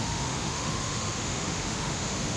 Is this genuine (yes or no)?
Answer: no